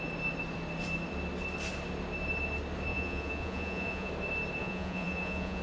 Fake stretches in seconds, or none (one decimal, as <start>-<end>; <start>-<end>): 2.9-4.1; 4.6-5.6